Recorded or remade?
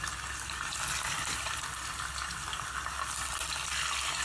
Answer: recorded